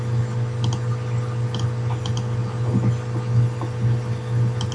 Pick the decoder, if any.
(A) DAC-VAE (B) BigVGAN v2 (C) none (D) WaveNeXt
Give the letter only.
C